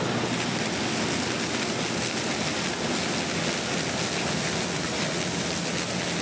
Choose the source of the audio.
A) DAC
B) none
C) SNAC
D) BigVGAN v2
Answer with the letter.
B